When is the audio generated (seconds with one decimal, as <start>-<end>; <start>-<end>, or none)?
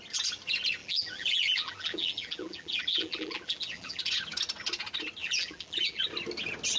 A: 0.8-4.0; 5.2-6.0